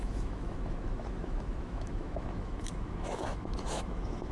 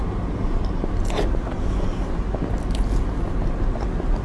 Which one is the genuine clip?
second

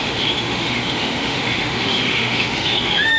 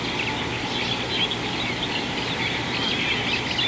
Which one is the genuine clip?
second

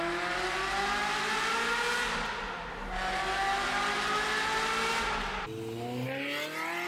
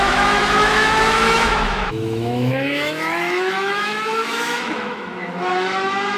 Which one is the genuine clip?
first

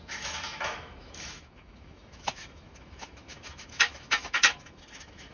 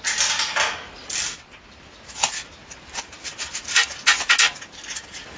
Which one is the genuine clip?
second